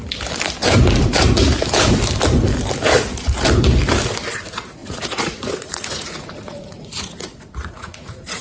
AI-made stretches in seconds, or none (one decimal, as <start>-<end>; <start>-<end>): 4.8-8.4